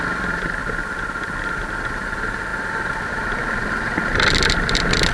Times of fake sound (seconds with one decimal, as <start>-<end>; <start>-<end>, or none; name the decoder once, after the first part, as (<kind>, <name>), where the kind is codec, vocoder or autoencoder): none